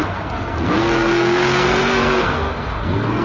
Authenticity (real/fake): fake